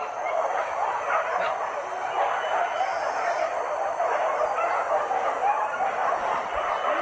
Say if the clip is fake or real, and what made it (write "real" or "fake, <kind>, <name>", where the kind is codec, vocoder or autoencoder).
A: real